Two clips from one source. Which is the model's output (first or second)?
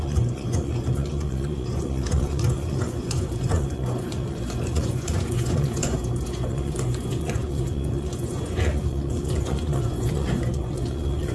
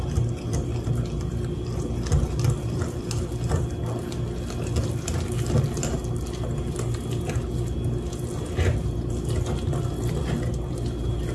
first